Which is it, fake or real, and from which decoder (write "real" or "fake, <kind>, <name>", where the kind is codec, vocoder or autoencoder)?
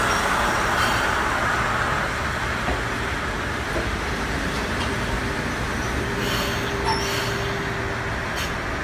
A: real